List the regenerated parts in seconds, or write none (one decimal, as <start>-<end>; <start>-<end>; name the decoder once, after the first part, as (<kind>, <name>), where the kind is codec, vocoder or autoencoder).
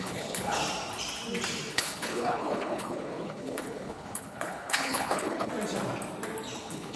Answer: 0.0-0.6 (codec, HILCodec); 1.7-5.5; 6.6-7.0